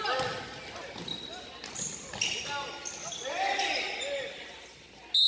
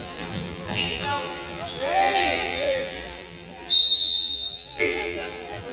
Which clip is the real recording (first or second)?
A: first